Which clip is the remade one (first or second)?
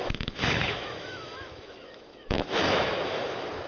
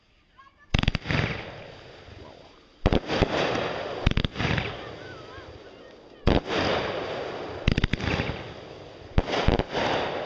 first